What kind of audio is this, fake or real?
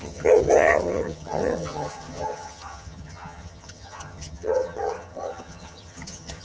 fake